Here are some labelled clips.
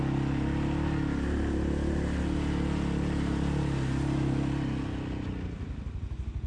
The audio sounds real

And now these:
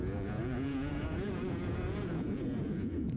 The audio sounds fake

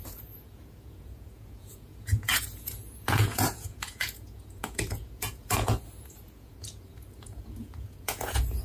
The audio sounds fake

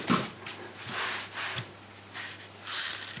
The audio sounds real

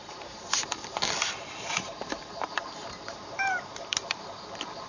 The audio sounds fake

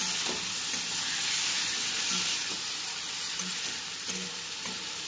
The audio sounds real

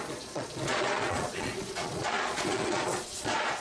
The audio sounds fake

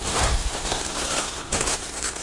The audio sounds fake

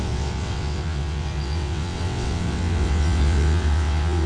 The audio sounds fake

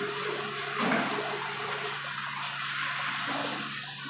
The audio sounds real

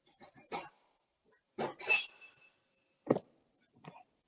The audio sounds fake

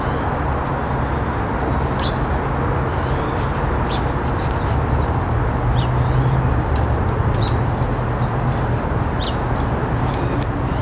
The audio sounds real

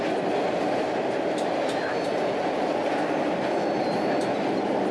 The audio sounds real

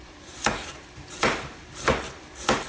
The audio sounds real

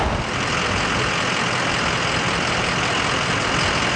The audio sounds real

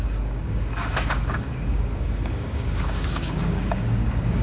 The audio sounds fake